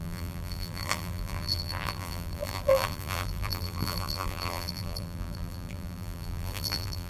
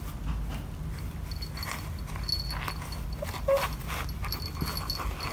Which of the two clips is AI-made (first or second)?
first